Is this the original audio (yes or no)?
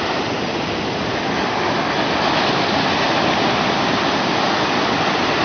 yes